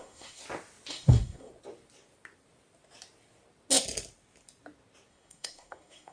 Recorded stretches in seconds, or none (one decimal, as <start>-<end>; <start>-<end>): 0.4-0.9; 1.5-5.1